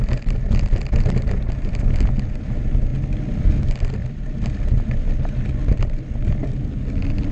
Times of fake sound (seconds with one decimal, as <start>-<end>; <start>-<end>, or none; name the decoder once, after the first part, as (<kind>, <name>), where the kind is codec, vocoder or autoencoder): none

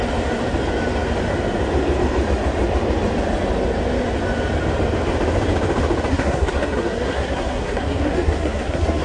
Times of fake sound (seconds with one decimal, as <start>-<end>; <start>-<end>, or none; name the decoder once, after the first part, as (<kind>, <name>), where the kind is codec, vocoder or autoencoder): 6.1-9.0 (codec, SNAC)